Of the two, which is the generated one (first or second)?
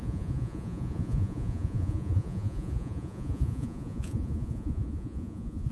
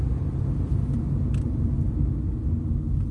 first